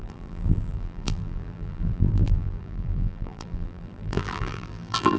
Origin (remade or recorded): remade